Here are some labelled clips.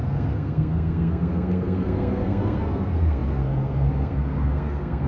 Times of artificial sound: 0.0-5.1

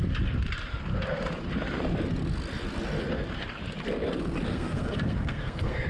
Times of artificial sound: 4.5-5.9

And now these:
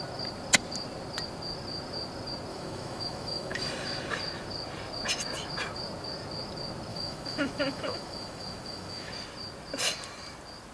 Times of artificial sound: 2.5-3.6; 6.9-9.1

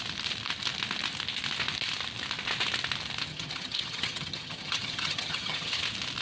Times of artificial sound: 3.3-5.8

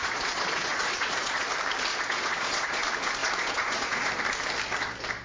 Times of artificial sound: 0.0-1.5; 1.9-2.8; 3.2-4.1

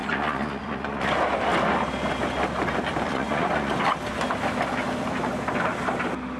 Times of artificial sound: 0.0-1.1; 3.1-3.8

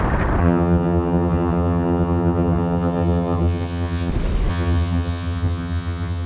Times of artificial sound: 0.4-4.1; 4.5-6.3